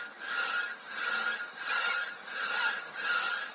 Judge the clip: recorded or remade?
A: recorded